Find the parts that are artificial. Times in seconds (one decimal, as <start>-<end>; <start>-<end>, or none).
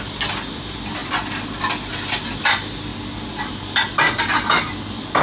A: 2.9-3.5